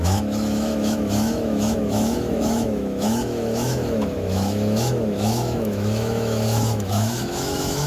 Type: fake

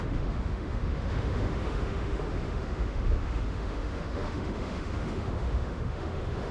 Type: fake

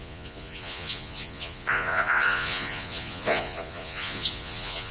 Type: fake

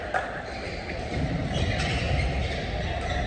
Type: real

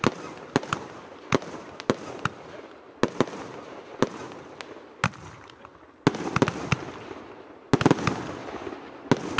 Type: real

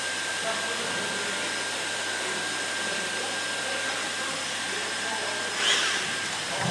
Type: real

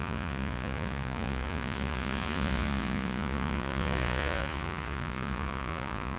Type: fake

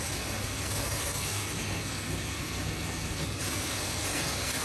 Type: fake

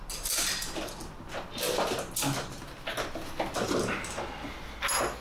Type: real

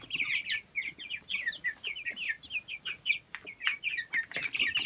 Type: real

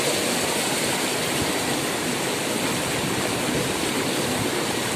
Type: real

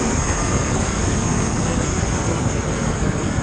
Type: fake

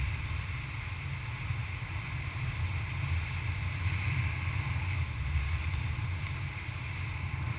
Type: real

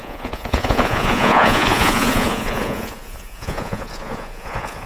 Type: fake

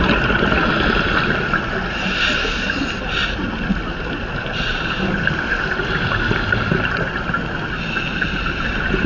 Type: real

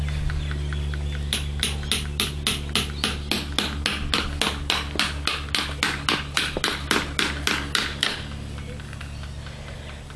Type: real